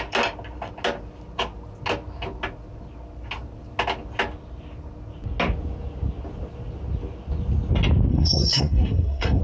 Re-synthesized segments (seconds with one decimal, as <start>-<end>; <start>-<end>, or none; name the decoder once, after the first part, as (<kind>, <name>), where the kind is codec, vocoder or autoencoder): 8.1-9.4 (codec, SNAC)